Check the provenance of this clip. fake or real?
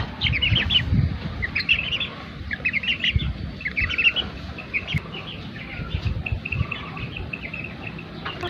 real